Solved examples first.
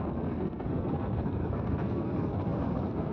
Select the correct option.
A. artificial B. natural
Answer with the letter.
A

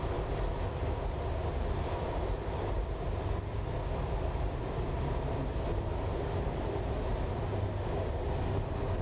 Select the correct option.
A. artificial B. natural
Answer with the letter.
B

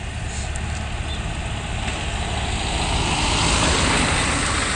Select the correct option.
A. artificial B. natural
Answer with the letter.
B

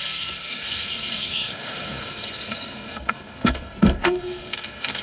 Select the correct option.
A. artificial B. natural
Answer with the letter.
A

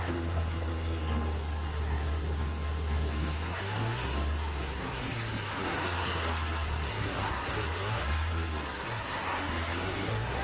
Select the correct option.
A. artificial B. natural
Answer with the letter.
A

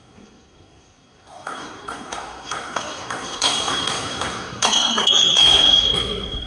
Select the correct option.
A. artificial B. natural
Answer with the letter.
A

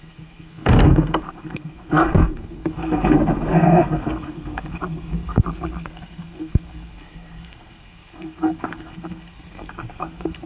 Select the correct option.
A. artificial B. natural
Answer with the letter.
A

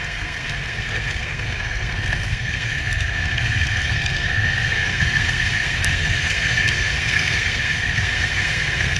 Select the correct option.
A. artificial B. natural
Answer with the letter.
A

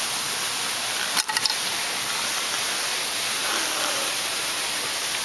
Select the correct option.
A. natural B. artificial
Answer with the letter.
A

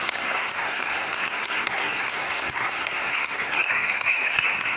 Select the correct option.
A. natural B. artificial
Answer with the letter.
B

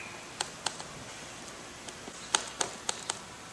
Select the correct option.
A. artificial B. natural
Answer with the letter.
B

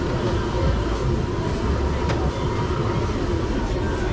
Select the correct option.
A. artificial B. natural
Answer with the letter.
B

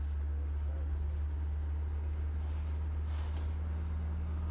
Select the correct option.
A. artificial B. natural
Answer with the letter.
B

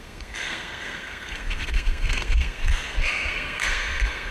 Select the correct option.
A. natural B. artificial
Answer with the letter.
B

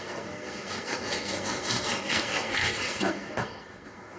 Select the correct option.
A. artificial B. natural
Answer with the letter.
A